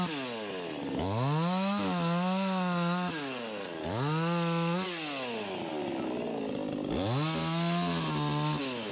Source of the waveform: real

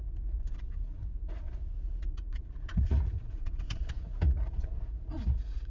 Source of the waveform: fake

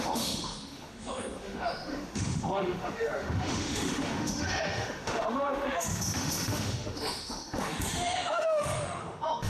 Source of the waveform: fake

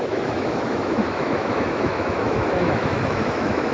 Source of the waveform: fake